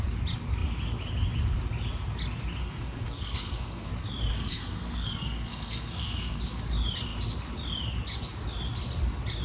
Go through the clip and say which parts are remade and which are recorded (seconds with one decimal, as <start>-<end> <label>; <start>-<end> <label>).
0.0-2.6 recorded; 2.6-3.9 remade; 3.9-4.3 recorded; 4.3-6.4 remade; 6.4-9.4 recorded